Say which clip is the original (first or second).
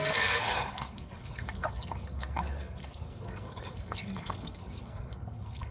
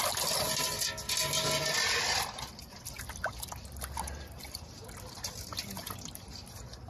second